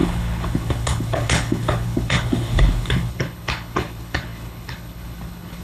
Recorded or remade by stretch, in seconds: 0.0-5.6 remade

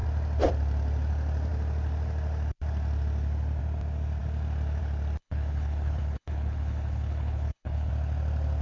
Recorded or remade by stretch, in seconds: 0.0-5.2 recorded; 5.2-7.9 remade; 7.9-8.6 recorded

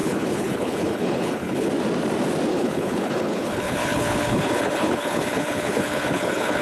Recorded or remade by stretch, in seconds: 0.0-1.7 remade; 1.7-2.5 recorded; 2.5-6.6 remade

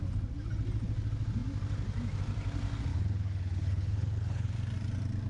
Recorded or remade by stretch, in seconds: 0.0-2.9 recorded; 2.9-4.5 remade; 4.5-5.3 recorded

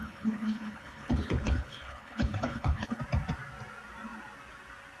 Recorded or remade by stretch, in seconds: 0.0-3.0 remade; 3.0-5.0 recorded

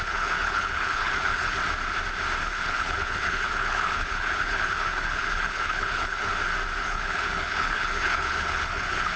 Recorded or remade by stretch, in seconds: 0.0-1.6 remade; 1.6-2.4 recorded; 2.4-6.3 remade; 6.3-6.8 recorded; 6.8-9.2 remade

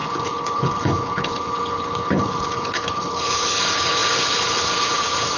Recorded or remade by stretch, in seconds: 0.0-5.4 remade

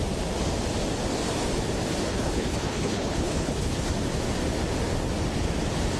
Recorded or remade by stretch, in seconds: 0.0-2.1 recorded; 2.1-3.9 remade; 3.9-6.0 recorded